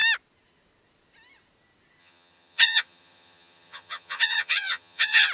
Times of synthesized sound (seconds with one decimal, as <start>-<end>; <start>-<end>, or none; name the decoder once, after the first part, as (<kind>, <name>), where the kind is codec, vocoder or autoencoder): 2.0-5.3 (vocoder, HiFi-GAN)